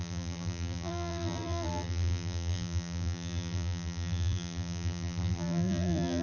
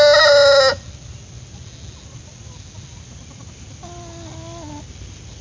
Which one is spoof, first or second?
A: first